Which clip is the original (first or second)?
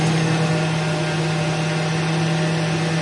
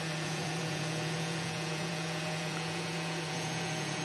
first